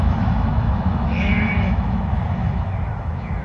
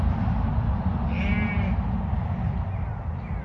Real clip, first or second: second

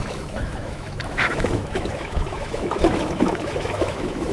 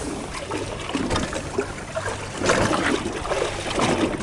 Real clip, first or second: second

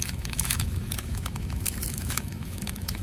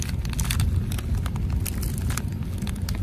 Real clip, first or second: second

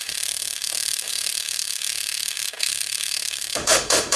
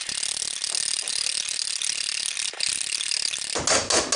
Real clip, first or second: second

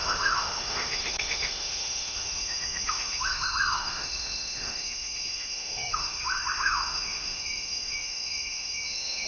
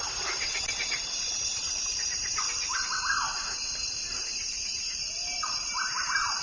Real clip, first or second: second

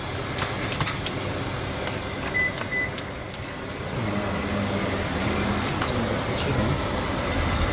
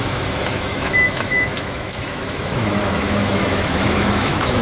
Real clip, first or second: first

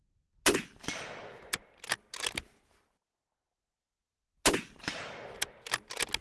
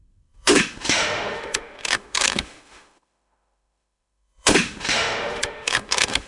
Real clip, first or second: first